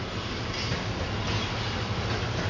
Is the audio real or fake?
real